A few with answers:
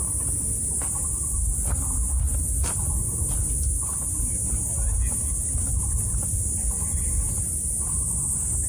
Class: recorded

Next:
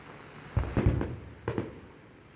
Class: recorded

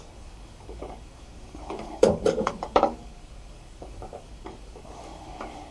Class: remade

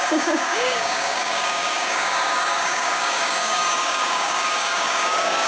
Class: remade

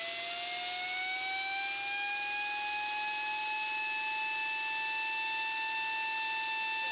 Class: recorded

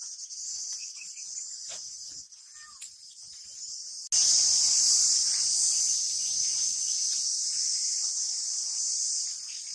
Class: recorded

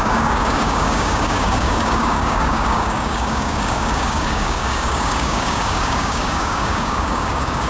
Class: remade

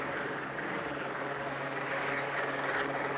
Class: remade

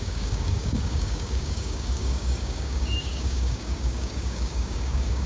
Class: remade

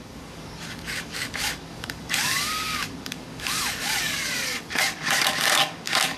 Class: remade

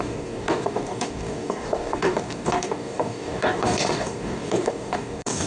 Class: remade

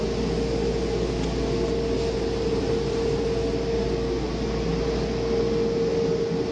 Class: recorded